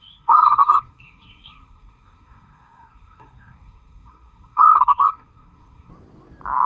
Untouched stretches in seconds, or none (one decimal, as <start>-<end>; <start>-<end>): 5.9-6.7